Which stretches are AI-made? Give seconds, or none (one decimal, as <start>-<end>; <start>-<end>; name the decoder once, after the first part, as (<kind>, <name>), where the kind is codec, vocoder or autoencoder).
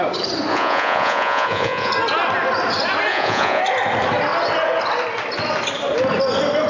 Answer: 0.5-1.9 (vocoder, Vocos); 3.1-3.6